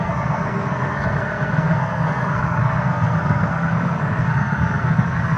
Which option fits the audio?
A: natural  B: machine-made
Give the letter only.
B